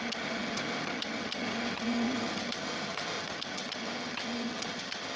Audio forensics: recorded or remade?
remade